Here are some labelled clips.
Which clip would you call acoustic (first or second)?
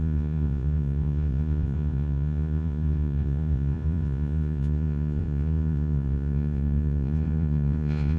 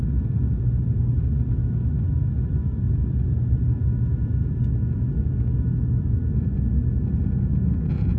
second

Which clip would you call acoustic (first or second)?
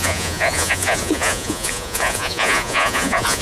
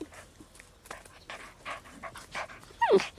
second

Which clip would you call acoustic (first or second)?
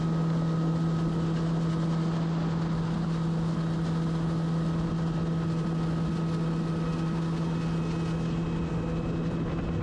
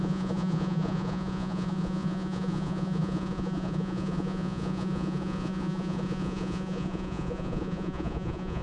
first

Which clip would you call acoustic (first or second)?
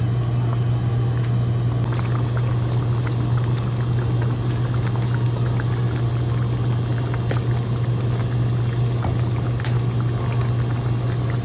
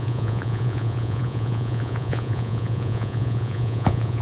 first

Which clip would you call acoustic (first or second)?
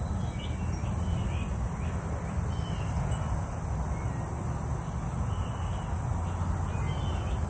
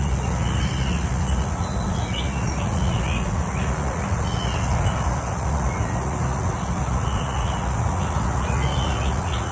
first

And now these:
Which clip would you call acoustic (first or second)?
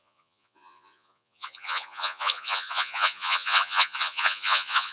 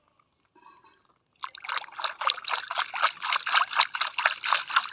second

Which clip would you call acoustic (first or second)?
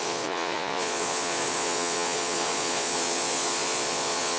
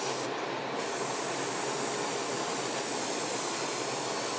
second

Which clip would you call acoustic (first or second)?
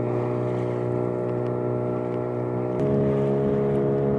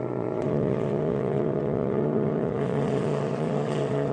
first